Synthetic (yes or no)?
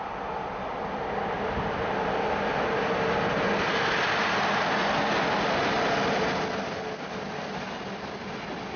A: no